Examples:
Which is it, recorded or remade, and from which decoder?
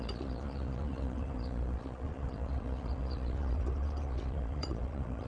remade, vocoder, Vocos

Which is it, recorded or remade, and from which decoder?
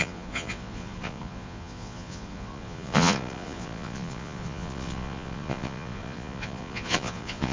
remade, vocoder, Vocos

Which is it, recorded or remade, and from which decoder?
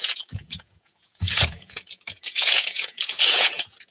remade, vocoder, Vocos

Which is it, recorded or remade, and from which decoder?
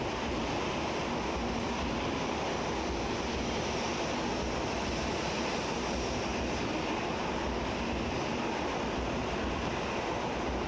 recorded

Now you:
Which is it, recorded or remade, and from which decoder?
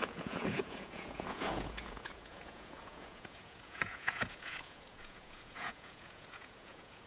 remade, vocoder, Vocos